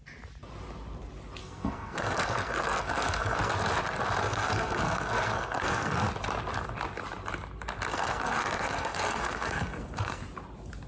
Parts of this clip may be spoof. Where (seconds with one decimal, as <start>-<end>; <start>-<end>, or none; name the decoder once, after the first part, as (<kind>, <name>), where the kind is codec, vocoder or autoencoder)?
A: 1.4-3.5 (codec, SNAC); 4.2-6.1; 7.9-10.2